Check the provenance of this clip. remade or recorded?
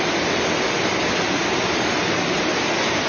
recorded